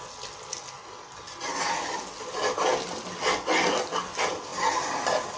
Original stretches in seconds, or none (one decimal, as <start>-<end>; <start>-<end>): 0.0-5.4